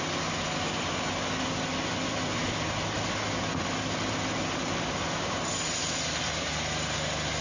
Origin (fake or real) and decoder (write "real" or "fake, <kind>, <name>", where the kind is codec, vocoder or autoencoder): real